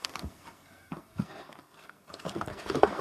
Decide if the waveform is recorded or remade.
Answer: remade